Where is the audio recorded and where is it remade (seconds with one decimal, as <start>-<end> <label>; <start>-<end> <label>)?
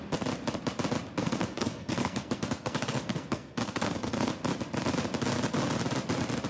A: 0.0-1.2 recorded; 1.2-4.3 remade; 4.3-6.5 recorded